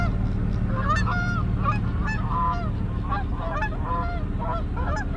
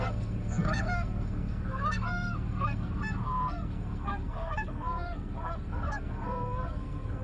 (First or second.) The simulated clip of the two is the second